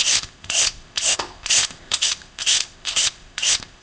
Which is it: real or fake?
fake